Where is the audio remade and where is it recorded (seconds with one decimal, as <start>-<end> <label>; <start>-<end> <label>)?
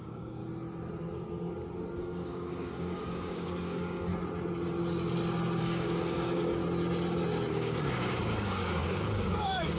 0.0-0.4 remade; 0.4-2.0 recorded; 2.0-4.1 remade; 4.1-5.6 recorded; 5.6-6.6 remade; 6.6-7.5 recorded; 7.5-9.8 remade